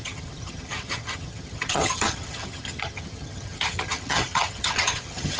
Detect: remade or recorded remade